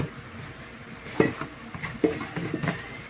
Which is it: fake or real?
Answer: real